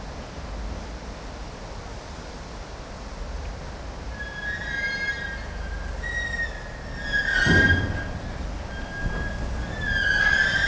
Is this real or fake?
real